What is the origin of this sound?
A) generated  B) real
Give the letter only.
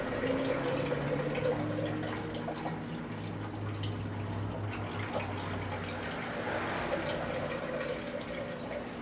B